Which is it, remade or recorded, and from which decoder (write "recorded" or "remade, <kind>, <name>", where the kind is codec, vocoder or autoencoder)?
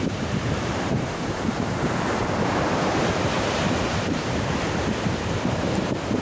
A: remade, vocoder, BigVGAN v2